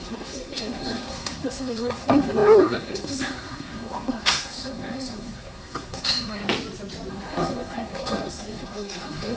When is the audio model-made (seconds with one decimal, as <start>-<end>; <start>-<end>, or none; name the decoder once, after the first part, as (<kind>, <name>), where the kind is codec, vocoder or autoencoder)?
0.0-6.4 (codec, SNAC); 7.1-9.4